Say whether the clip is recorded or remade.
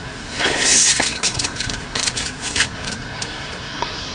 remade